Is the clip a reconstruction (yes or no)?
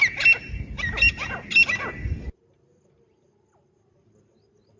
no